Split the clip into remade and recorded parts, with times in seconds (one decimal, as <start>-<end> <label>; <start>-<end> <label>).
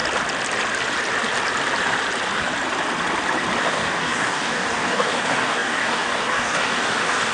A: 0.0-3.6 recorded; 3.6-7.3 remade